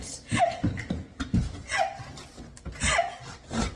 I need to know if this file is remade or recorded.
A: recorded